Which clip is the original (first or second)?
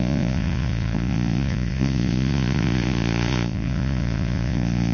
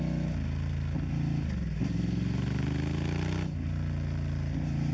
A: second